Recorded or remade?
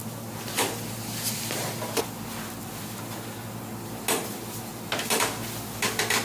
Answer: recorded